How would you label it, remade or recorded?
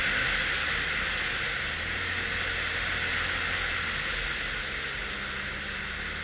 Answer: recorded